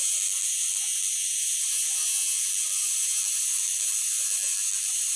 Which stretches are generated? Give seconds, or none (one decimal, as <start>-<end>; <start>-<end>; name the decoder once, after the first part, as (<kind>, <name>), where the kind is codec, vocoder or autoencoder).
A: none